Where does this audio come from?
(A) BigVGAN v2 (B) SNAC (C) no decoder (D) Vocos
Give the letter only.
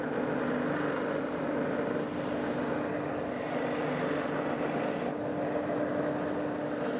C